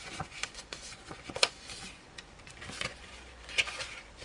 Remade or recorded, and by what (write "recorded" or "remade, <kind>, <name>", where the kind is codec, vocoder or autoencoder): remade, vocoder, Vocos